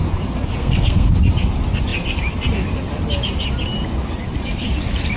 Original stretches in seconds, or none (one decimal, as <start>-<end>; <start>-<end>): 0.0-0.6; 1.1-5.2